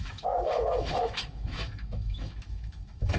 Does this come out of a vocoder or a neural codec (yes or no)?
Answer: yes